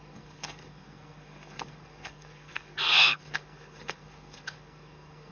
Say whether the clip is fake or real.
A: fake